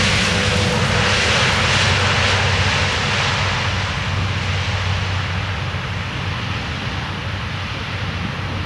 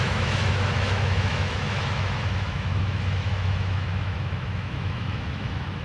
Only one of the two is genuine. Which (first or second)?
first